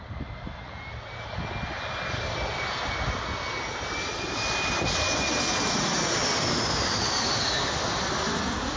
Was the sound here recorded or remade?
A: recorded